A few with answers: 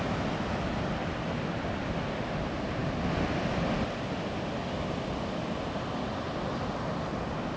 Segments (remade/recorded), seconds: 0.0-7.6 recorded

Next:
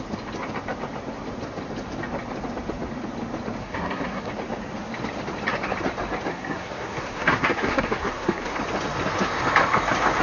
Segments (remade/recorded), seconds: 0.0-3.6 recorded; 3.6-4.3 remade; 4.3-6.3 recorded; 6.3-8.6 remade; 8.6-10.2 recorded